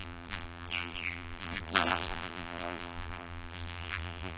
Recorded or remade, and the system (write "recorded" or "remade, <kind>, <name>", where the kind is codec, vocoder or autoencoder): remade, vocoder, BigVGAN v2